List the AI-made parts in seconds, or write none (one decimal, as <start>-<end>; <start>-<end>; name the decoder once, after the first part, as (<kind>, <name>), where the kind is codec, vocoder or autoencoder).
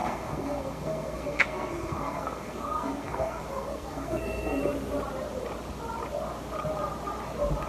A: 0.0-4.6 (codec, SNAC)